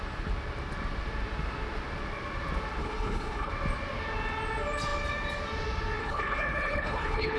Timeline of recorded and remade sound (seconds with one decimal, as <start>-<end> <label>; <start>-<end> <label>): 0.0-2.8 recorded; 2.8-3.5 remade; 3.5-6.0 recorded; 6.0-7.4 remade